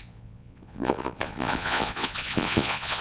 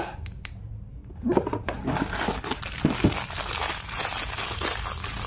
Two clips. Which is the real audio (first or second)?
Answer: second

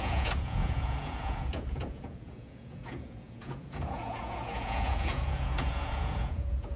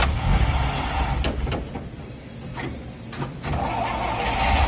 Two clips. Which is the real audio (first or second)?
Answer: second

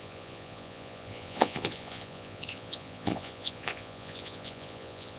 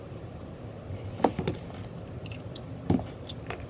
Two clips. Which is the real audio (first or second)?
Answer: second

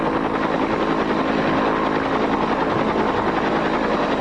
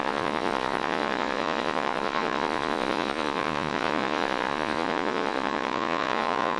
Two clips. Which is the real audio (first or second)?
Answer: first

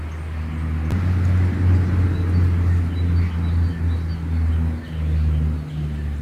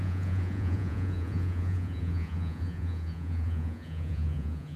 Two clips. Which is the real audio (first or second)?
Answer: first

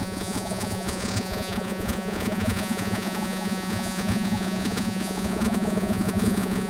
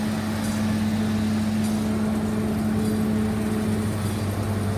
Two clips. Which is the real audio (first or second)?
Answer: second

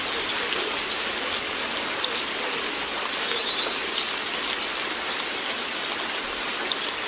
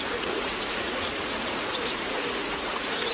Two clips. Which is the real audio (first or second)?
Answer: first